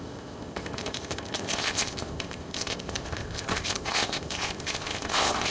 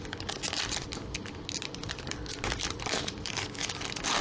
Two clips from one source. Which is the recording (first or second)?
second